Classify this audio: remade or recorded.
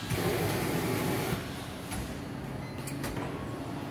recorded